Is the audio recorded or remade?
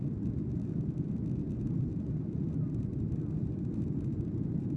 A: recorded